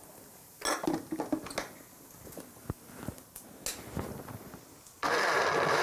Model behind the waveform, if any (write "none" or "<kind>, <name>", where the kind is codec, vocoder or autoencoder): none